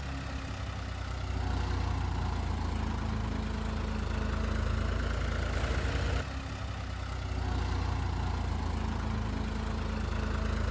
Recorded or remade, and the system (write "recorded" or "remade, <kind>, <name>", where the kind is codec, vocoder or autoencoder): recorded